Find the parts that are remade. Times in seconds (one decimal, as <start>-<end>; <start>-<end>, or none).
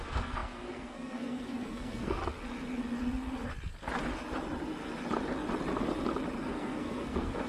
0.0-2.2; 6.4-7.5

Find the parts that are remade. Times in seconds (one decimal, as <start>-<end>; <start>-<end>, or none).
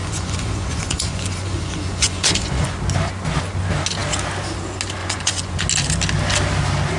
0.0-2.8; 5.0-5.6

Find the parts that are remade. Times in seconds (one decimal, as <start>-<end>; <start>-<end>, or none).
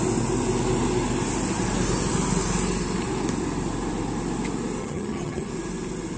4.8-5.5